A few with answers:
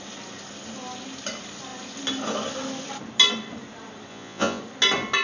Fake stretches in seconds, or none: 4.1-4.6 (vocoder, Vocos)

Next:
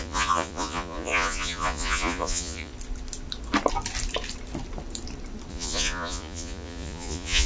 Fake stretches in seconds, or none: 0.0-2.7 (vocoder, Vocos); 5.5-7.5

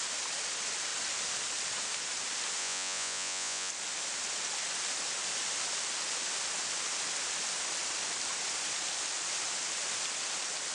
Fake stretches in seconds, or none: 2.6-3.7 (vocoder, Vocos)

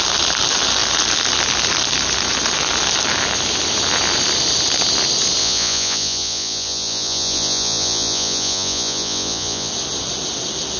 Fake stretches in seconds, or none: 5.4-9.7 (vocoder, Vocos)

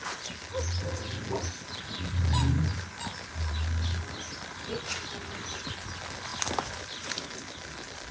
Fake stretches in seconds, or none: none

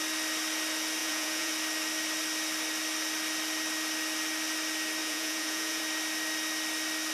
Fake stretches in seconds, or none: 1.0-1.5 (vocoder, Vocos); 5.0-5.8

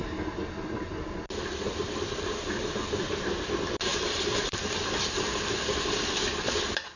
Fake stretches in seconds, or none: none